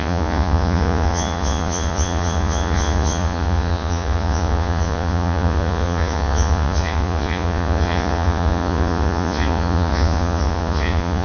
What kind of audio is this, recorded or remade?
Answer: remade